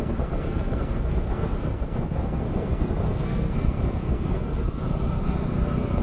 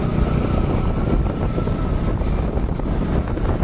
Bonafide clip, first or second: second